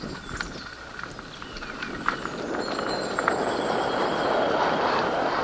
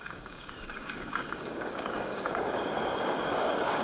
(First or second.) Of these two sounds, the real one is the first